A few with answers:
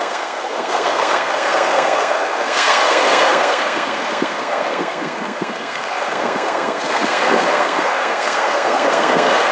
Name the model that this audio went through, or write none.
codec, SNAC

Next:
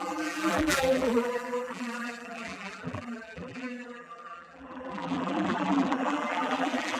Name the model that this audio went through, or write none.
vocoder, BigVGAN v2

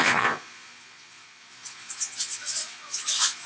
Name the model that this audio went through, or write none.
vocoder, Vocos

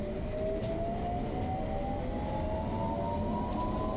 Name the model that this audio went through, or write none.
none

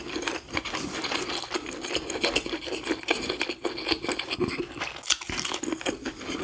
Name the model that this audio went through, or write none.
none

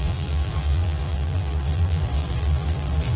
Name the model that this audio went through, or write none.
vocoder, BigVGAN v2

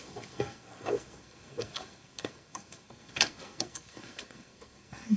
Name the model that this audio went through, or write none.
codec, SNAC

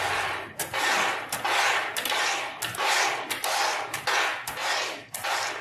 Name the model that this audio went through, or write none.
none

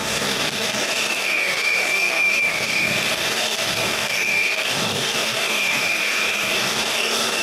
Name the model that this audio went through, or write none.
codec, DAC